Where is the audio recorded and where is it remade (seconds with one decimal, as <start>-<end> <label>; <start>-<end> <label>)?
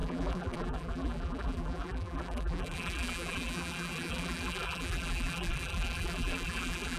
0.0-7.0 remade